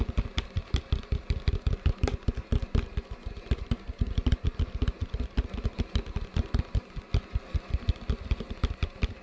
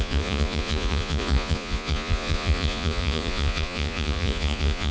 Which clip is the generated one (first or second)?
second